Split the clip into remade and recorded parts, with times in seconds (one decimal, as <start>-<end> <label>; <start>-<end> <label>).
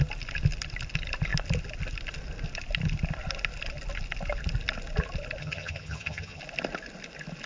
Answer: 0.0-5.4 recorded; 5.4-6.4 remade; 6.4-7.5 recorded